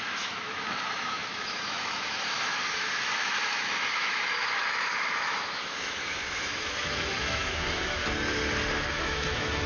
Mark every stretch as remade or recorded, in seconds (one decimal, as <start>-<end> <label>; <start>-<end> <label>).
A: 0.0-8.0 remade; 8.0-8.9 recorded; 8.9-9.7 remade